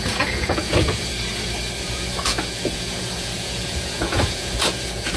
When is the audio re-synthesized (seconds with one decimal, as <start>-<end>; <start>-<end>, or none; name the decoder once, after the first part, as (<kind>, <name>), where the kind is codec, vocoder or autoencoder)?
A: 0.0-1.1 (vocoder, Vocos); 1.9-5.2